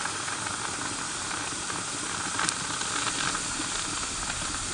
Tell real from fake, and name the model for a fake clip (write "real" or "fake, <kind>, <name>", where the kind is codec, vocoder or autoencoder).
real